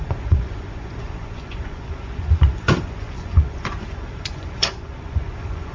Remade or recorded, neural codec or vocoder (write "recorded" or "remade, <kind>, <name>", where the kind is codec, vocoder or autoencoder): remade, vocoder, Vocos